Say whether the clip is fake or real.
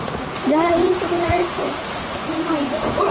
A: fake